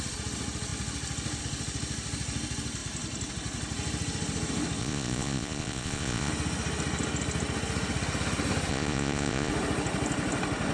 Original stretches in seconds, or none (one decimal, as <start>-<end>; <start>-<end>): 0.0-4.8; 6.3-8.7; 9.5-10.7